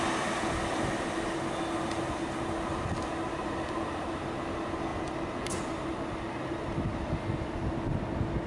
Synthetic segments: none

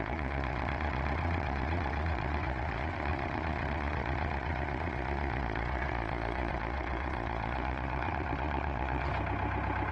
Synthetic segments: 0.0-9.1 (vocoder, Vocos)

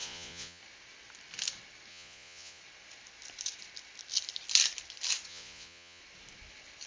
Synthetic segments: 0.0-0.6 (vocoder, Vocos); 1.9-2.6; 5.3-6.0

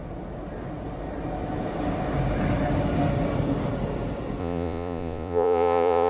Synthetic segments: 4.4-6.1 (vocoder, Vocos)

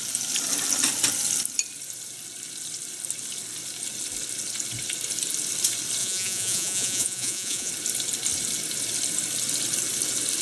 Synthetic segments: 6.0-7.7 (vocoder, Vocos)

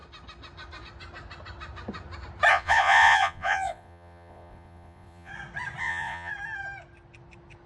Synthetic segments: 2.5-5.3 (vocoder, Vocos); 5.8-6.3

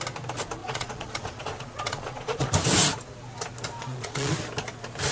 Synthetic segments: 0.6-2.5 (vocoder, Vocos); 3.8-4.3